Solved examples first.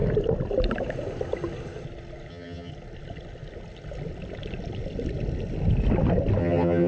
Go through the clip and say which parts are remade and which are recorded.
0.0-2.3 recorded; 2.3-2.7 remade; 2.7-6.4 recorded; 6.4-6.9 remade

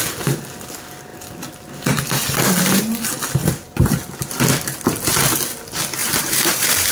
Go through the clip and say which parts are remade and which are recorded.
0.0-3.4 recorded; 3.4-3.9 remade; 3.9-6.0 recorded; 6.0-6.9 remade